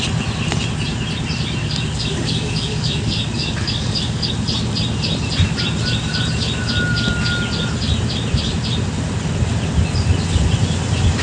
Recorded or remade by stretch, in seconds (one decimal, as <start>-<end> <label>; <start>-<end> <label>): 0.0-1.6 recorded; 1.6-4.3 remade; 4.3-11.2 recorded